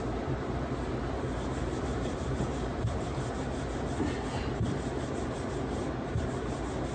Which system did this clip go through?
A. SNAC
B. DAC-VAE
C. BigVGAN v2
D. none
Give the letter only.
C